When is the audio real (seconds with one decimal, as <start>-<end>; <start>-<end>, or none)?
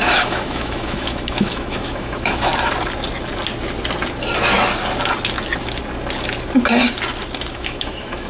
2.5-7.5